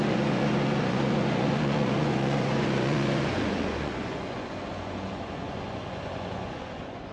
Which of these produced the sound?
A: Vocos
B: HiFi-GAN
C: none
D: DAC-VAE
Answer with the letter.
A